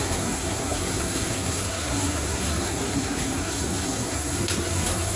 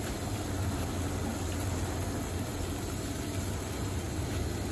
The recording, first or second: second